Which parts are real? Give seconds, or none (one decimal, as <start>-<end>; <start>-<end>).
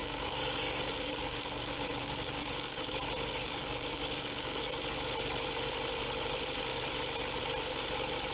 2.9-3.3; 4.7-8.3